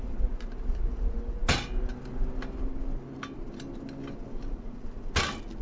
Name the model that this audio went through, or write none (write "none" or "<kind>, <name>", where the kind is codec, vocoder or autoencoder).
none